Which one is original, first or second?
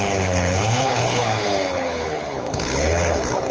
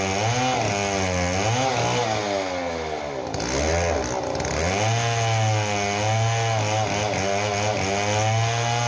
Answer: second